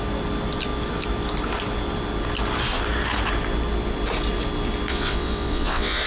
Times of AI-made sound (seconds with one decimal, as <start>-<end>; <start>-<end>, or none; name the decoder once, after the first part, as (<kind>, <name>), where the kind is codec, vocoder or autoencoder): 4.9-6.1 (vocoder, WaveNeXt)